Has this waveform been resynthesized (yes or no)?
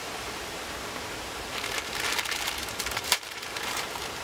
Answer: yes